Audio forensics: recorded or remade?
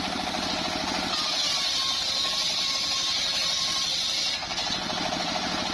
recorded